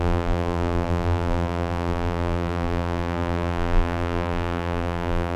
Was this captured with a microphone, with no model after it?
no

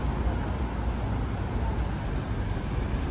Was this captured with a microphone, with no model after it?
yes